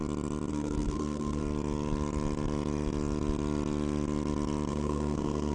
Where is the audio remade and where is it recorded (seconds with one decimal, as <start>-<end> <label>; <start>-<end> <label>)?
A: 0.0-0.5 recorded; 0.5-1.4 remade; 1.4-4.7 recorded; 4.7-5.5 remade